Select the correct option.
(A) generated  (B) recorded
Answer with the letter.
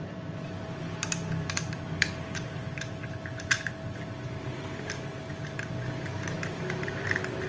B